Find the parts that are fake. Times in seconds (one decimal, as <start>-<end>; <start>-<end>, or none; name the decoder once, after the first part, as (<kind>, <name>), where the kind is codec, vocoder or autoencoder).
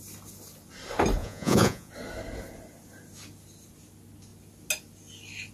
1.2-1.9 (vocoder, Vocos)